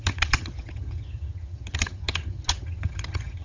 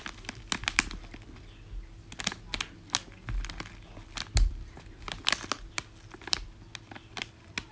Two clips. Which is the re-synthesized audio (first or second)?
first